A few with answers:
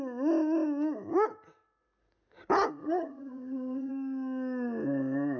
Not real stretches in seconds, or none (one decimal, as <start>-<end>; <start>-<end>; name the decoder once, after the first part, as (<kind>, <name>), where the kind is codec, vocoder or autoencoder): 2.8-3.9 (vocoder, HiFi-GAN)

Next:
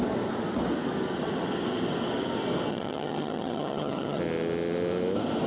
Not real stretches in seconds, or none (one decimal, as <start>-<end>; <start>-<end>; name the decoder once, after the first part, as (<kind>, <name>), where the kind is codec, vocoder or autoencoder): 2.7-4.2 (vocoder, HiFi-GAN)

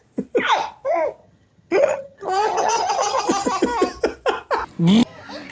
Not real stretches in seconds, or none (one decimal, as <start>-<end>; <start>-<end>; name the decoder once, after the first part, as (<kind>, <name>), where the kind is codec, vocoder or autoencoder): 1.2-3.2 (vocoder, HiFi-GAN)

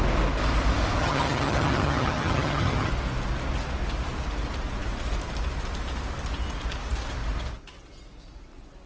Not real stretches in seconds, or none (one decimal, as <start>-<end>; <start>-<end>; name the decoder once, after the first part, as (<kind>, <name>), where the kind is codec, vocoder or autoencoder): 1.0-2.9 (vocoder, HiFi-GAN)

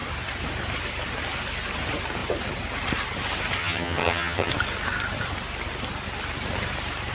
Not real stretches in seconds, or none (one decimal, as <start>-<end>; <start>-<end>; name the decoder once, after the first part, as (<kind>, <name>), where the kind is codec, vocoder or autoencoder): 3.6-4.5 (vocoder, HiFi-GAN)